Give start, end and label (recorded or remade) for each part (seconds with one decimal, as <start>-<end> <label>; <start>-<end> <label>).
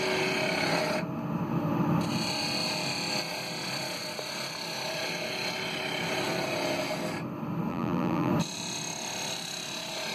0.0-7.7 recorded; 7.7-8.3 remade; 8.3-10.1 recorded